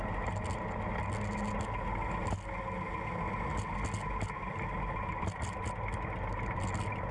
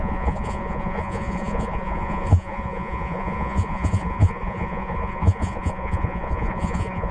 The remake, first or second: second